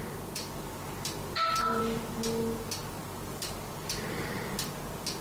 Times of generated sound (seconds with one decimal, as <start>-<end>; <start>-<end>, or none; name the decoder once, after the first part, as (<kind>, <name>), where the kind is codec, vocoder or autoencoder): 1.2-1.8 (vocoder, BigVGAN v2); 2.8-4.5